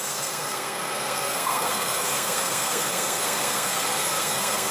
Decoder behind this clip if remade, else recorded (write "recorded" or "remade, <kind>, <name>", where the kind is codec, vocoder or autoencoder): remade, codec, SNAC